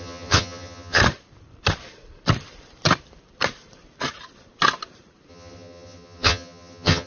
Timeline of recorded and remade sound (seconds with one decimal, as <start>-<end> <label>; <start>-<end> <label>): 0.0-1.0 remade; 1.0-5.3 recorded; 5.3-7.1 remade